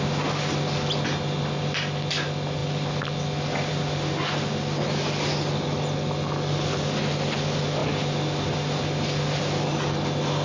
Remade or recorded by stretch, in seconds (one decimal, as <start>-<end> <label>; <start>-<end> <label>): 0.0-10.4 recorded